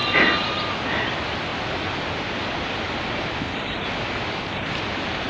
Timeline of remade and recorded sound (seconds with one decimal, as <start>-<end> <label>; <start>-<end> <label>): 0.0-5.3 recorded